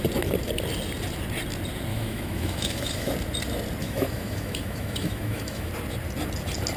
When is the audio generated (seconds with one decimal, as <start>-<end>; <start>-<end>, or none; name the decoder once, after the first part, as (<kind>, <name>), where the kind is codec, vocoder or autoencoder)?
1.9-3.1 (autoencoder, DAC-VAE); 3.8-5.7